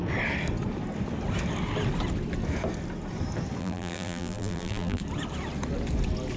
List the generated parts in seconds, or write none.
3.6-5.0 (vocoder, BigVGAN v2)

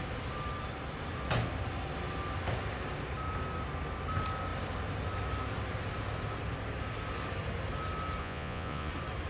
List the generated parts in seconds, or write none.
8.2-8.9 (vocoder, Vocos)

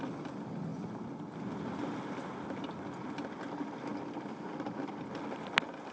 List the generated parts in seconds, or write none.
none